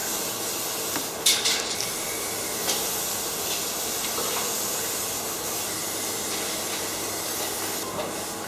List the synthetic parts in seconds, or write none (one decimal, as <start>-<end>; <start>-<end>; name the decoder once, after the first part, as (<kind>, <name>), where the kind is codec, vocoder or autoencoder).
none